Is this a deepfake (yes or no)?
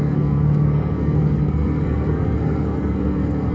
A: yes